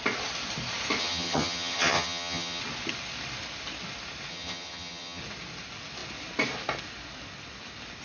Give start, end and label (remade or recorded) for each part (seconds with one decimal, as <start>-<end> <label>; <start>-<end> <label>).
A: 0.0-1.0 recorded; 1.0-2.6 remade; 2.6-4.3 recorded; 4.3-5.2 remade; 5.2-8.0 recorded